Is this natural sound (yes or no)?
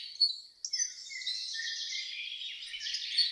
yes